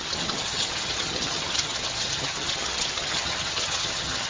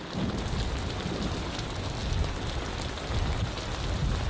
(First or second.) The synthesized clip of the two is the first